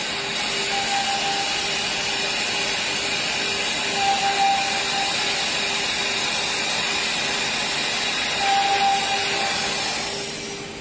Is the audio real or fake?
real